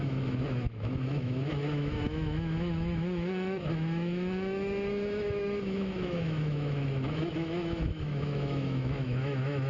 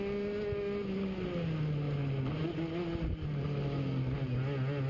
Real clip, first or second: second